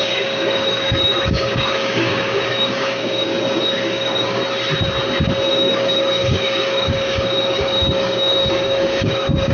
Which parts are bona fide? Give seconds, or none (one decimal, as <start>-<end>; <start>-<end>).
4.4-5.5